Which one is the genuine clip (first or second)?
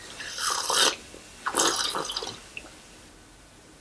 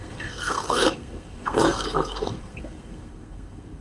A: first